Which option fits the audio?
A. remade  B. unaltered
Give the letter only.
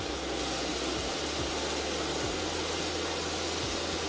B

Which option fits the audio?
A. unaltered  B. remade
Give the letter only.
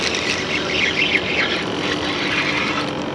A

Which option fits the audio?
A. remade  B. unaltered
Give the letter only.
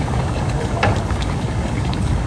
A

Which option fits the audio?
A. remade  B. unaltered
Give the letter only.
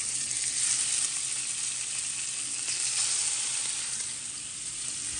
B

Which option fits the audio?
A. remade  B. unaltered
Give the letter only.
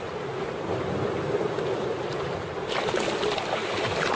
B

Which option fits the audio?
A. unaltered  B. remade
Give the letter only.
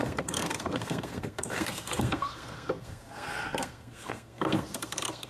B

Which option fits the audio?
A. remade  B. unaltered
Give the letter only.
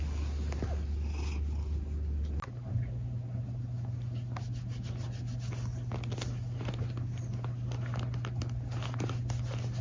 B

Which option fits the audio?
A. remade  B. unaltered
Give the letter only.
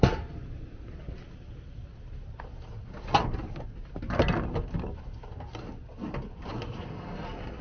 B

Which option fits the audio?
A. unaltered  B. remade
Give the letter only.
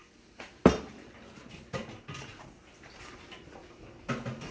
A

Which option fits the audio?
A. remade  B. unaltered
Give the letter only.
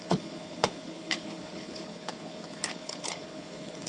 A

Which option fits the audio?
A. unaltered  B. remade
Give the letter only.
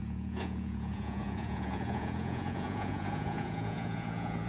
B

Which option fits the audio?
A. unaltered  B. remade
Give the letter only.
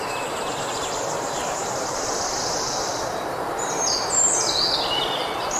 A